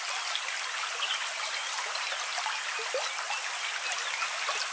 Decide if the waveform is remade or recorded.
recorded